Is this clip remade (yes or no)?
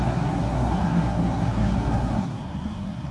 yes